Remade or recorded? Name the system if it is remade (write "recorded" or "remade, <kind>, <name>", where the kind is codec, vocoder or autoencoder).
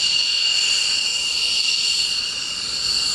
recorded